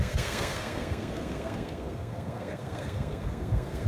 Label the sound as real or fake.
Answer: fake